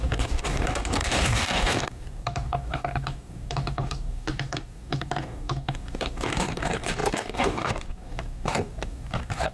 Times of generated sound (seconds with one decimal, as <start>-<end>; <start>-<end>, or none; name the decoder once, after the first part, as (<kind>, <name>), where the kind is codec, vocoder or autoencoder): 0.0-9.5 (codec, DAC)